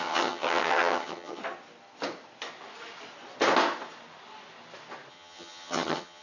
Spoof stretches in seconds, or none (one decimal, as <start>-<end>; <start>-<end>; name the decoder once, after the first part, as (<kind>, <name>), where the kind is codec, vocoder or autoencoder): 0.0-1.4 (vocoder, HiFi-GAN); 5.1-6.2